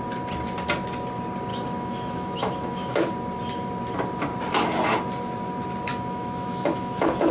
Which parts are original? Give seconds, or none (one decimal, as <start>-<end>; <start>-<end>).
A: 0.0-1.5; 3.1-5.9